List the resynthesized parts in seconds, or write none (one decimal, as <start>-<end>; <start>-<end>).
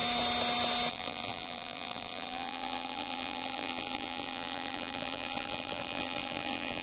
0.9-6.8